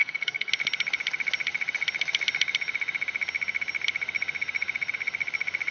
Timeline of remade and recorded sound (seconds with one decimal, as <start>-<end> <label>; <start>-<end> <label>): 0.0-0.5 remade; 0.5-5.7 recorded